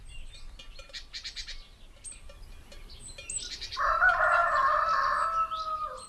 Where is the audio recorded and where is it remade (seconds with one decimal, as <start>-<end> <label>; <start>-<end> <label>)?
0.0-6.1 recorded